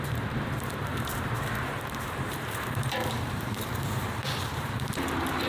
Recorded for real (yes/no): no